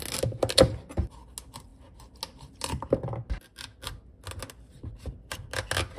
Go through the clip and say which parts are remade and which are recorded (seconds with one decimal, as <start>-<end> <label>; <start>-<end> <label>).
0.0-6.0 recorded

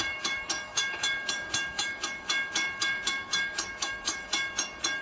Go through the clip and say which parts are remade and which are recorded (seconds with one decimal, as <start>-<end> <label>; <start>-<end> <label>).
0.0-5.0 remade

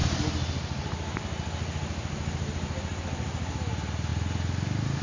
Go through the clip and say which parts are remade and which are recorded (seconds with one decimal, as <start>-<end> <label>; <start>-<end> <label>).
0.0-5.0 recorded

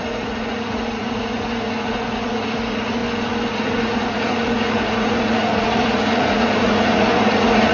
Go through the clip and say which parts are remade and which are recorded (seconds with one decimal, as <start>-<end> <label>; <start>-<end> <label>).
0.0-3.0 remade; 3.0-3.5 recorded; 3.5-7.7 remade